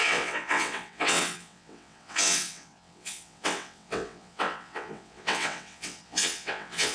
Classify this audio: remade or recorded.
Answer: remade